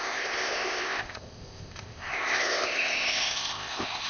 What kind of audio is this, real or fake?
fake